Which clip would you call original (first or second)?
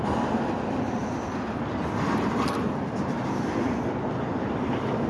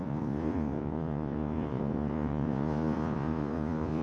first